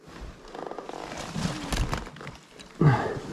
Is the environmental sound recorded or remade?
recorded